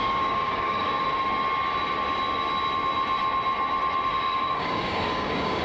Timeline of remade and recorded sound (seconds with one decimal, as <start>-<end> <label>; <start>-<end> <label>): 0.0-0.9 remade; 0.9-4.1 recorded; 4.1-5.6 remade